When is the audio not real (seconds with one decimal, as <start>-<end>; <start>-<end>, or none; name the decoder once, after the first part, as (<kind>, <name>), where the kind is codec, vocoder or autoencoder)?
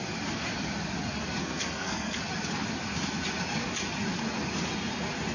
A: 1.4-2.2 (codec, SNAC)